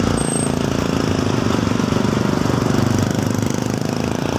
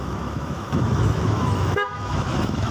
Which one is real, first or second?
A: first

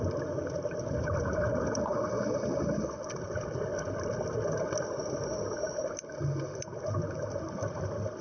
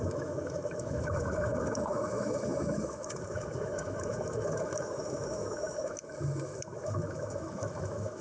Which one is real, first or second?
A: first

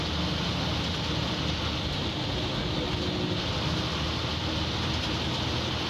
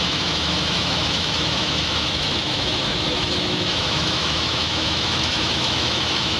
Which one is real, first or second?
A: first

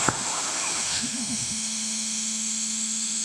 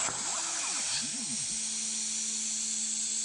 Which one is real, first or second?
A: second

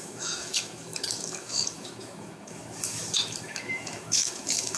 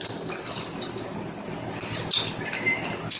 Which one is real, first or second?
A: second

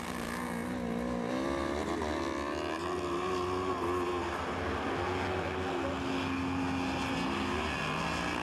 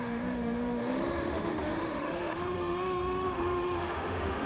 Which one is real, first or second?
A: first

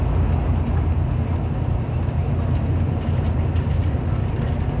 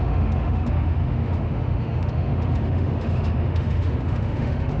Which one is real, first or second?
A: first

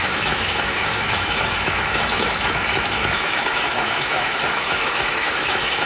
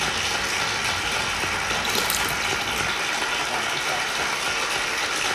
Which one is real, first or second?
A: second